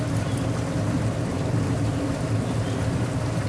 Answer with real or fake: real